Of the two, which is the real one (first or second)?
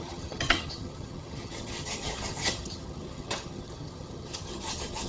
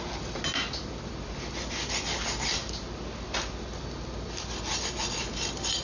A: second